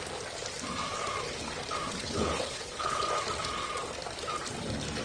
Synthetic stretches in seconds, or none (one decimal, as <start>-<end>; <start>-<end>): 2.0-3.0